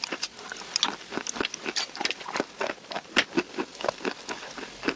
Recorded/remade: recorded